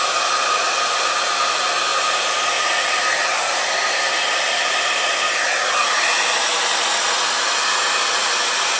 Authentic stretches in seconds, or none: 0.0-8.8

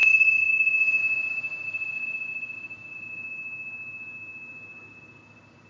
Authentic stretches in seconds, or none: 1.0-5.7

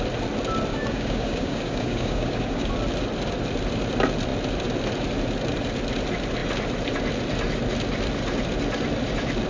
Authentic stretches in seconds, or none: 0.0-0.7; 2.7-9.5

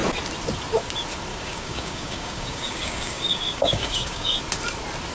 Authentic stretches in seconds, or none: 0.0-1.3; 4.4-5.1

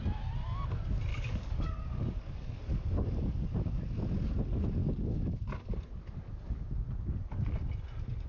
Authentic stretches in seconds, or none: 0.0-1.1; 3.8-4.8; 5.7-8.3

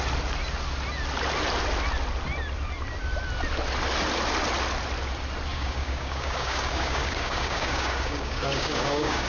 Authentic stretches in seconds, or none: 0.0-5.5

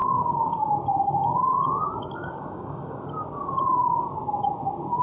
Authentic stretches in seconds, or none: 3.0-5.0

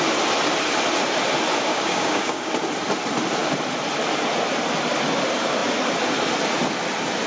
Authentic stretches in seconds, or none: 0.0-1.7; 2.5-7.3